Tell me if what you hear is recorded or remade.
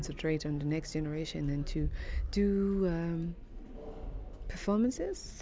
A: recorded